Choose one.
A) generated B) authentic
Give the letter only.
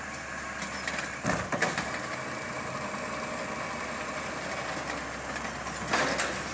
B